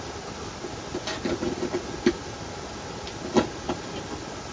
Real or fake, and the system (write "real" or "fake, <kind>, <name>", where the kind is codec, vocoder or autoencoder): real